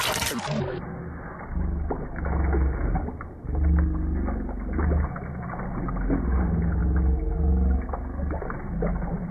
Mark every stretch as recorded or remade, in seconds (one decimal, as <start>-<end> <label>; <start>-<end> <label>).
0.0-9.3 recorded